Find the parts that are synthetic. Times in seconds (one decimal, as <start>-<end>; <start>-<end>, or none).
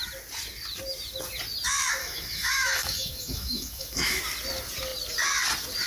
2.0-4.2